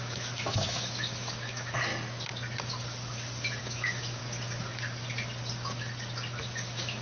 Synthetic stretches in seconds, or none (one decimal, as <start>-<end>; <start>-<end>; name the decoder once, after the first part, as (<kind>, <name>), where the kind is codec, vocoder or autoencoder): 0.0-1.9 (autoencoder, DAC-VAE); 3.6-4.2; 6.4-7.0